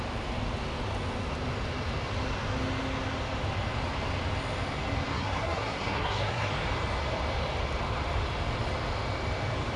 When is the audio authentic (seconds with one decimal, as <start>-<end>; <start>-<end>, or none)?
0.0-5.1; 6.5-9.8